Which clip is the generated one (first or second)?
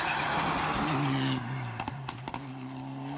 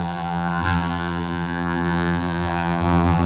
second